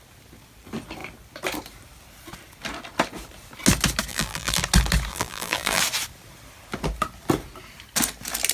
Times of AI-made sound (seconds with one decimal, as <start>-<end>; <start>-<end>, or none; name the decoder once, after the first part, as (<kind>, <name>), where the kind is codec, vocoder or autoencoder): 4.1-4.6 (vocoder, BigVGAN v2); 5.1-5.8